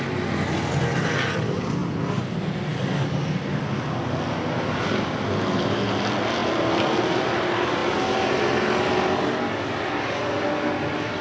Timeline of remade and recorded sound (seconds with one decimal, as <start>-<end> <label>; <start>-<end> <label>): 0.0-11.2 recorded